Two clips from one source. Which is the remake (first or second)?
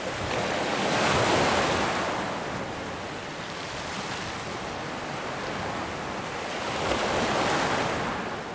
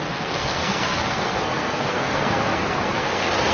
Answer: second